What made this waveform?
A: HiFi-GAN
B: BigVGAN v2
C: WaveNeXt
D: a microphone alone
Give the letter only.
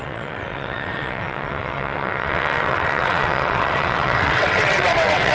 C